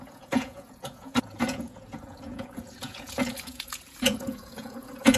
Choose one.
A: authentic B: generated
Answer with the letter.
B